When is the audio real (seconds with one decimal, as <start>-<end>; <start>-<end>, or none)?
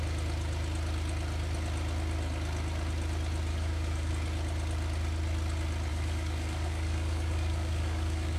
0.0-3.5; 4.1-5.9